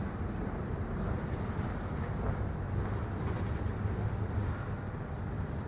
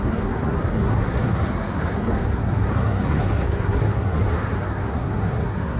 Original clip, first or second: first